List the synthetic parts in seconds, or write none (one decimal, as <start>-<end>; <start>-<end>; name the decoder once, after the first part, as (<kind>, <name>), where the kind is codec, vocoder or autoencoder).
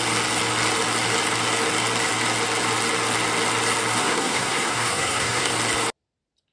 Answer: 4.0-5.5 (codec, SNAC)